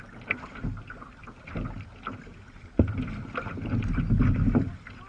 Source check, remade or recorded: recorded